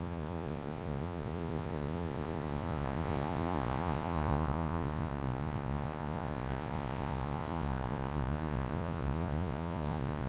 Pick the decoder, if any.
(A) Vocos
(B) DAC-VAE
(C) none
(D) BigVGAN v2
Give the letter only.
A